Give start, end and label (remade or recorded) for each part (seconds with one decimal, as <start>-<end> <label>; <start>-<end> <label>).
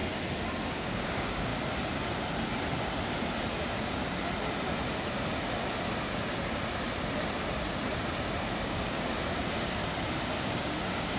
0.0-0.7 recorded; 0.7-1.5 remade; 1.5-3.6 recorded; 3.6-4.0 remade; 4.0-8.6 recorded; 8.6-9.8 remade; 9.8-10.6 recorded; 10.6-11.2 remade